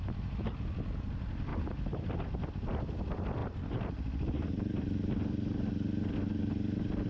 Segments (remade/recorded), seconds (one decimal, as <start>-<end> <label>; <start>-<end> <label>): 0.0-1.5 recorded; 1.5-2.5 remade; 2.5-3.4 recorded; 3.4-5.2 remade; 5.2-7.1 recorded